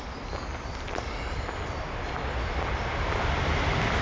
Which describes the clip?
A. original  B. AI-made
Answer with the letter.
A